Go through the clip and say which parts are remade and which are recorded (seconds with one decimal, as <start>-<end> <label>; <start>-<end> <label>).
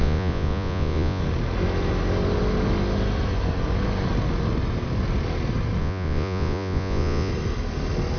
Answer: 0.0-1.2 remade; 1.2-5.8 recorded; 5.8-7.3 remade; 7.3-8.2 recorded